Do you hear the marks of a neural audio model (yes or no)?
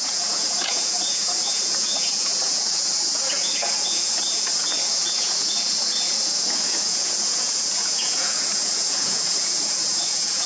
yes